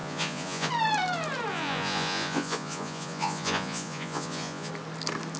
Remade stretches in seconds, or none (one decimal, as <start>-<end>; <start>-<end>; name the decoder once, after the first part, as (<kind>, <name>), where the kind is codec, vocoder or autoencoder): 0.0-0.7 (vocoder, Vocos); 1.5-4.7